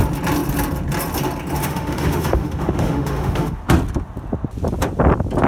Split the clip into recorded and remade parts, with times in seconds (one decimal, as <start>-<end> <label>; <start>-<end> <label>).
0.0-1.6 recorded; 1.6-3.6 remade; 3.6-5.5 recorded